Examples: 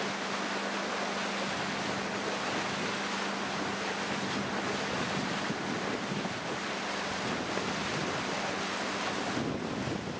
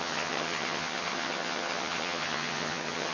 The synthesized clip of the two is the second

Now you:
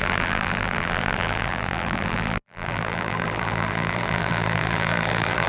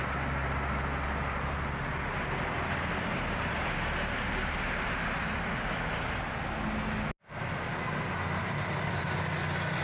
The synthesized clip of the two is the first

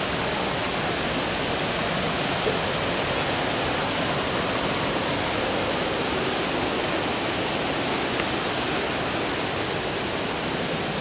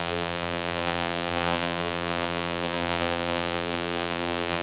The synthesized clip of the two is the second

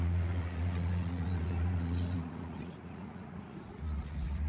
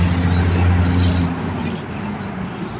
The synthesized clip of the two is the first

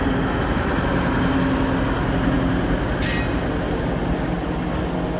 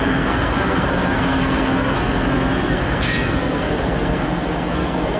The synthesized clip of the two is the second